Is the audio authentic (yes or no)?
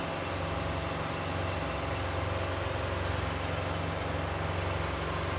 yes